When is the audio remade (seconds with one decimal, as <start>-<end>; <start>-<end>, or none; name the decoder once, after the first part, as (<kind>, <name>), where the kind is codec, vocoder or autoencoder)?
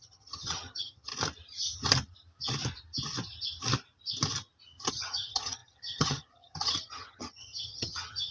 0.0-1.1 (vocoder, HiFi-GAN); 4.9-8.3